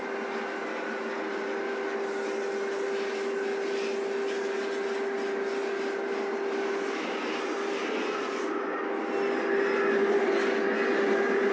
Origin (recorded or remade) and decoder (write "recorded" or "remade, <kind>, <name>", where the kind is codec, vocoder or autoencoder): recorded